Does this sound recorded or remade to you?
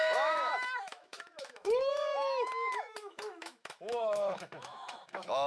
remade